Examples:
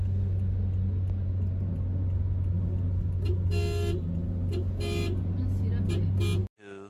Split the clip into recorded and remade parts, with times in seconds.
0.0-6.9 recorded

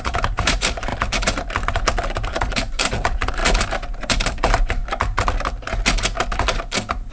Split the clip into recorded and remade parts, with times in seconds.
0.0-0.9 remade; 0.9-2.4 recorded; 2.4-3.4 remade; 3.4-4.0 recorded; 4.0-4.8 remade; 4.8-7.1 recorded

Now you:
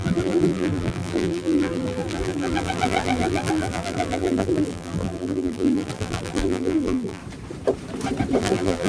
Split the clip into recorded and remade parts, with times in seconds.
0.0-7.2 remade; 7.2-8.4 recorded; 8.4-8.9 remade

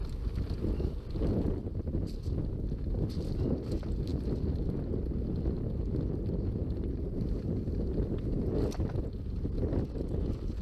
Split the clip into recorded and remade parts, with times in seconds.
0.0-10.6 recorded

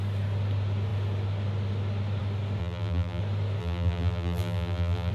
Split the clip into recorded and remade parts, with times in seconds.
0.0-2.6 recorded; 2.6-3.2 remade; 3.2-3.6 recorded; 3.6-5.1 remade

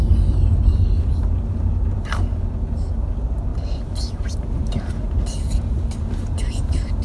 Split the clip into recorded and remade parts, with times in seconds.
0.0-7.0 recorded